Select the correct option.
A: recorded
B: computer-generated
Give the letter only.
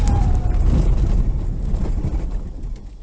A